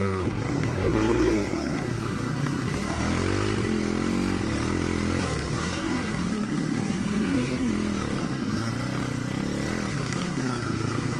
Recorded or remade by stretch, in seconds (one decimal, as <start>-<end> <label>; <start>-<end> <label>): 0.0-3.0 remade; 3.0-5.2 recorded; 5.2-7.7 remade; 7.7-8.2 recorded; 8.2-8.7 remade; 8.7-9.9 recorded; 9.9-11.2 remade